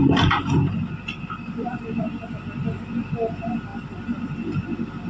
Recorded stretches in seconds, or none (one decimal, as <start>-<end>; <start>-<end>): 1.8-3.7; 4.2-5.1